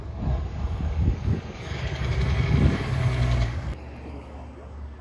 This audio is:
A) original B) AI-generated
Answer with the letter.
B